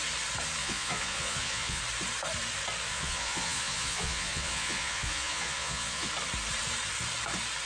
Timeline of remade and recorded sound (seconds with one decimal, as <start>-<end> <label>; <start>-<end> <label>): 0.0-0.6 recorded; 0.6-1.8 remade; 1.8-2.9 recorded; 2.9-6.1 remade; 6.1-7.7 recorded